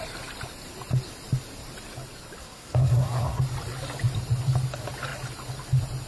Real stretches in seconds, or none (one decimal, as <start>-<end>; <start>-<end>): 0.0-2.4; 3.4-6.1